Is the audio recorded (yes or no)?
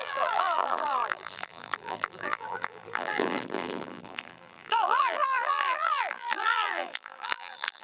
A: no